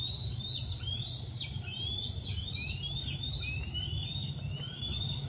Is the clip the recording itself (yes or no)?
yes